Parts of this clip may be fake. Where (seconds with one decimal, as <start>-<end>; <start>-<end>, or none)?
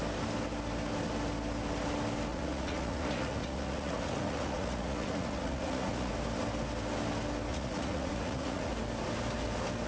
2.3-6.1; 7.5-8.7